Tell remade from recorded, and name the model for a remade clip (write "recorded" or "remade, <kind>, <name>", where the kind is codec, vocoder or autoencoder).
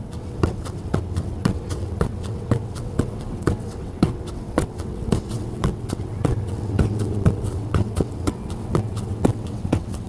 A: remade, vocoder, WaveNeXt